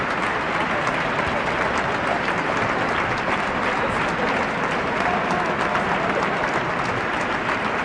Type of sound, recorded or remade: recorded